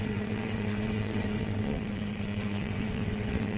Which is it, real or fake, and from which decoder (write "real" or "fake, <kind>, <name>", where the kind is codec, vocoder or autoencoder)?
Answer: fake, vocoder, WaveNeXt